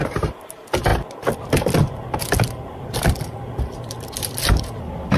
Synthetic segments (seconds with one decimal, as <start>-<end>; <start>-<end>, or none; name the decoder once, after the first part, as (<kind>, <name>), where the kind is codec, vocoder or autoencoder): none